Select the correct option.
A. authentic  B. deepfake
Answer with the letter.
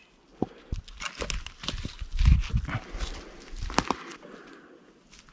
A